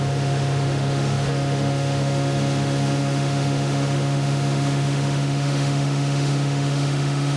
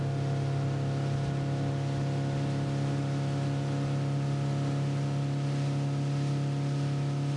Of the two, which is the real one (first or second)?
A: second